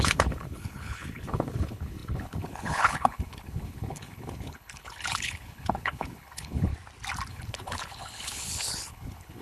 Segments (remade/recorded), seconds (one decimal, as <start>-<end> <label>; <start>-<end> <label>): 0.0-6.7 remade; 6.7-7.3 recorded; 7.3-9.4 remade